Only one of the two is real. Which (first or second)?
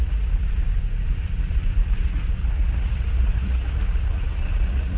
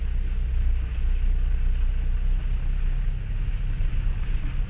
second